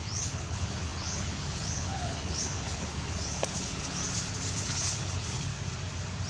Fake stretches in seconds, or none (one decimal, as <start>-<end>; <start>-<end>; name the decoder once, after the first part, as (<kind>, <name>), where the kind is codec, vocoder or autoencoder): 0.0-4.0 (codec, HILCodec); 4.5-5.5